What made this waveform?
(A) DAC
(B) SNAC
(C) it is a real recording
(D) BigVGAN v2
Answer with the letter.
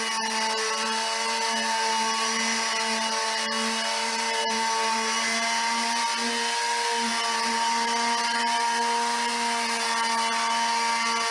C